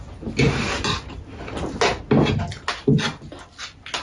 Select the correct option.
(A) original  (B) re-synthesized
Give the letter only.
A